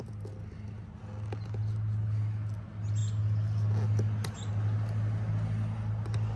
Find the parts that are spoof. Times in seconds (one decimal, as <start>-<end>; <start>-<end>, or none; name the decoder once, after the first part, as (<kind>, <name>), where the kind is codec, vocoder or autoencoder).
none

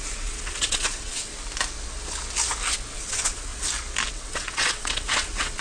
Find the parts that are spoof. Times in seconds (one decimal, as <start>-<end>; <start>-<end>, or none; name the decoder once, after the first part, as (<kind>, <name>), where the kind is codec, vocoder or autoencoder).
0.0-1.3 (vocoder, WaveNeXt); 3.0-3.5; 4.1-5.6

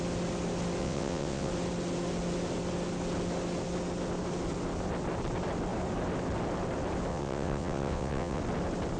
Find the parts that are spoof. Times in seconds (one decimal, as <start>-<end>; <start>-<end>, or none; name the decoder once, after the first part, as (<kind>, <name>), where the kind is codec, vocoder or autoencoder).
0.8-1.5 (vocoder, WaveNeXt); 7.1-8.4

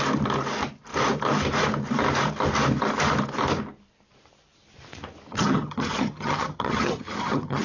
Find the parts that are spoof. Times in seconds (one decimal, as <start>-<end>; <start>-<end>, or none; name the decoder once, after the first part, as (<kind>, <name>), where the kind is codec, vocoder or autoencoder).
5.3-7.6 (vocoder, HiFi-GAN)